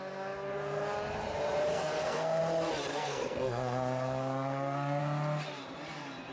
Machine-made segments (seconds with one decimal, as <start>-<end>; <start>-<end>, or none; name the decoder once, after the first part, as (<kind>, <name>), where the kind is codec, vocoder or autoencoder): 1.7-2.4 (codec, SNAC); 2.9-5.0